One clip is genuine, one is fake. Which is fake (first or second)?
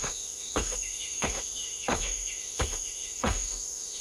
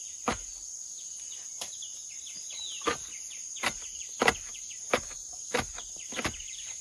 first